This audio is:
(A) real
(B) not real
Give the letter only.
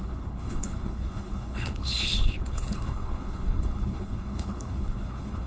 B